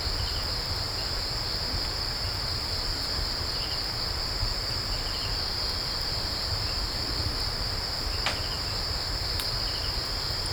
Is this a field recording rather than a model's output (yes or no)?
no